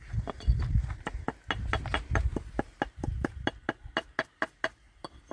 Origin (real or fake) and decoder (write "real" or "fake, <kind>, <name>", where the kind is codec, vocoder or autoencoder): real